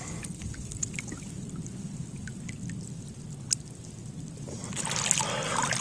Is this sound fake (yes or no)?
no